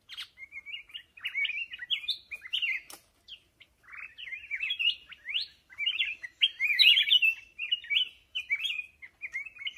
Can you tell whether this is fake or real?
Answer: real